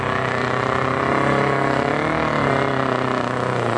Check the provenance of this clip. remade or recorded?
recorded